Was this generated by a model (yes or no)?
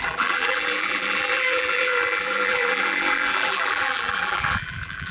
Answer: yes